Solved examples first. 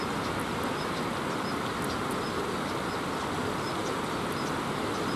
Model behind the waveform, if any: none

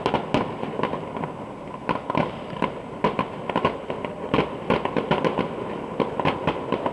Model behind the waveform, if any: none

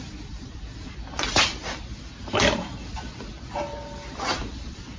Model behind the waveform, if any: vocoder, BigVGAN v2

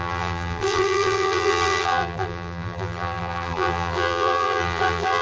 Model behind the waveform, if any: vocoder, BigVGAN v2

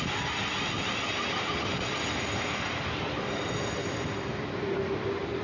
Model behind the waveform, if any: none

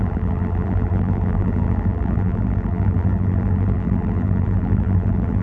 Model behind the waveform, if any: vocoder, BigVGAN v2